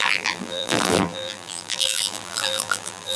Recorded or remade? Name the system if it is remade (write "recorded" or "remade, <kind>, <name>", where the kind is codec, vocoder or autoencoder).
remade, vocoder, BigVGAN v2